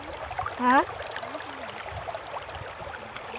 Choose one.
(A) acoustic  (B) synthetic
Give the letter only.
A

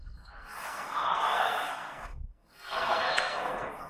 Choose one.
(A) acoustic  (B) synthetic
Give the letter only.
B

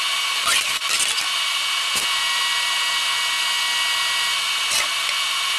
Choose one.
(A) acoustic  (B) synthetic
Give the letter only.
A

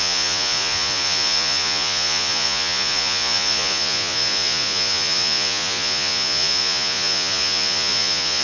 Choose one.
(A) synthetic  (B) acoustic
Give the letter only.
A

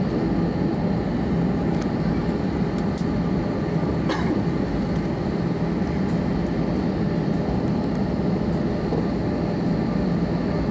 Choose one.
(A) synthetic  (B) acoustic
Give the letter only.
B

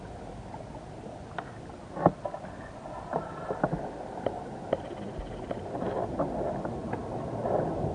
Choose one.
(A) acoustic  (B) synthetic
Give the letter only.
A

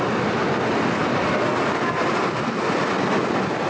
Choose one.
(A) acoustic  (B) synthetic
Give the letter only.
A